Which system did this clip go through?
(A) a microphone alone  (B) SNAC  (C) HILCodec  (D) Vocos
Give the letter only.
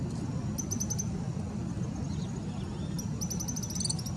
A